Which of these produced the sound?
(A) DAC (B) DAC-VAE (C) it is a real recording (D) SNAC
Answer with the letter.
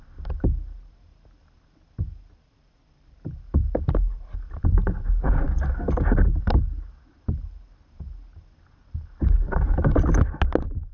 C